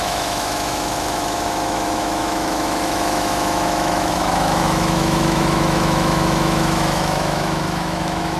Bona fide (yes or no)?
no